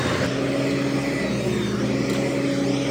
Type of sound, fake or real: real